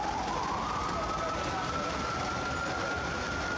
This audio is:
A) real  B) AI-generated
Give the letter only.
A